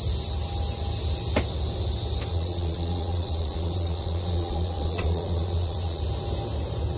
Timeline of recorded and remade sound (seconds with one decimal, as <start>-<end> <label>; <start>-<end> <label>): 0.0-2.3 recorded; 2.3-6.0 remade; 6.0-7.0 recorded